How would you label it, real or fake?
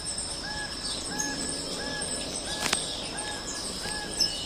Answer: real